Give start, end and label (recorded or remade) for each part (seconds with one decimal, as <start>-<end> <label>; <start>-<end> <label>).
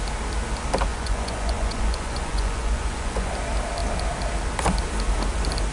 0.0-0.9 recorded; 0.9-3.3 remade; 3.3-5.7 recorded